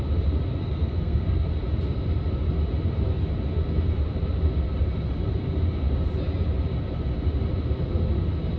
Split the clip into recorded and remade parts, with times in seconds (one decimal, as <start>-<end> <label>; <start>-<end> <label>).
0.0-0.6 recorded; 0.6-1.4 remade; 1.4-8.6 recorded